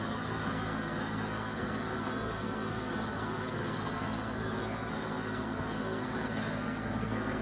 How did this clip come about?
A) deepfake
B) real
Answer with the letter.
A